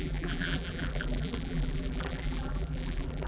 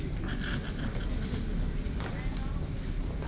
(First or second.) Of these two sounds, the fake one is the first